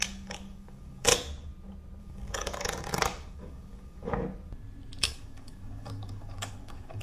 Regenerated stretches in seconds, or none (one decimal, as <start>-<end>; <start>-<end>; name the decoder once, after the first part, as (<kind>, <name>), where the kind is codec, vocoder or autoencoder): 0.0-1.1 (codec, DAC); 2.0-4.1; 5.0-7.0